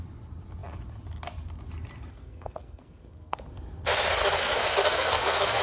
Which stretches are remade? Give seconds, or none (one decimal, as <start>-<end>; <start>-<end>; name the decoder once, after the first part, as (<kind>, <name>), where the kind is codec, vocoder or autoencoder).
2.1-3.4 (codec, SNAC); 4.4-5.6